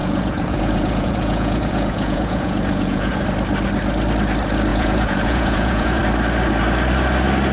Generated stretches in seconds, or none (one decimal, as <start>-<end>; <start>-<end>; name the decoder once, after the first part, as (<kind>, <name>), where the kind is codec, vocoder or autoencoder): 0.0-3.2 (vocoder, Vocos); 4.7-6.0